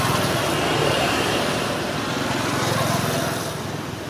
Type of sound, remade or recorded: recorded